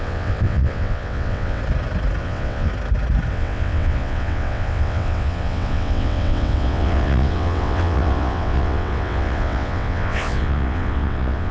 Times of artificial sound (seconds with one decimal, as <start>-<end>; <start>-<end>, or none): 0.0-1.6; 2.2-2.7; 3.3-11.5